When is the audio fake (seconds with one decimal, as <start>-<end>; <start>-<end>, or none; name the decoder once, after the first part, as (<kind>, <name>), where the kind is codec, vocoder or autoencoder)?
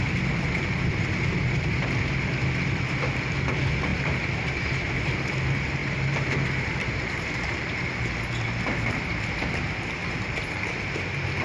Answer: 3.9-5.1 (vocoder, BigVGAN v2); 5.8-7.6; 10.0-11.4